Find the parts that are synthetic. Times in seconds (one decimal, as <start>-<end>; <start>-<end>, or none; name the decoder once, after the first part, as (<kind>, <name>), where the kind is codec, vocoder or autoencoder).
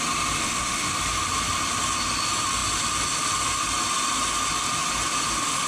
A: 0.4-0.9 (autoencoder, DAC-VAE)